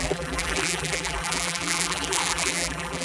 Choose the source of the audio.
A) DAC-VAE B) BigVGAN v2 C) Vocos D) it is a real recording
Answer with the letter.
B